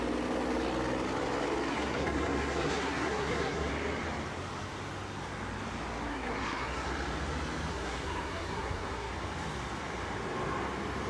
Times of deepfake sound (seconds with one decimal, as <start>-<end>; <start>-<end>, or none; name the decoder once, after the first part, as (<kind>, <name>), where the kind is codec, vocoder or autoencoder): 1.7-3.7 (codec, SNAC); 6.1-6.9; 7.7-9.1

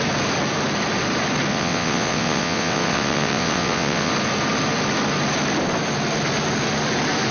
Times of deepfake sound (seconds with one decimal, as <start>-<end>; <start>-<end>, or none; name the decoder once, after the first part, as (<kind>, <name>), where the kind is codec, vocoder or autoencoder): 1.5-4.1 (vocoder, WaveNeXt)

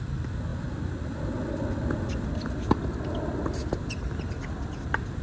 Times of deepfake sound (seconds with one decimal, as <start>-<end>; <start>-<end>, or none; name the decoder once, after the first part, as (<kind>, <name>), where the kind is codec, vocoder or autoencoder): none

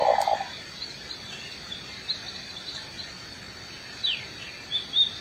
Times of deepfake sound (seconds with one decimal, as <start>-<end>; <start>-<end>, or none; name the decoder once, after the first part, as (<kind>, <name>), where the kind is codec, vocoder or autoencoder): none

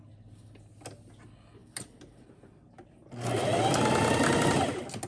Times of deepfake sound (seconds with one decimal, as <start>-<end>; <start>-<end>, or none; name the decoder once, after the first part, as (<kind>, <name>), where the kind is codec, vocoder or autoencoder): 1.6-2.4 (vocoder, BigVGAN v2)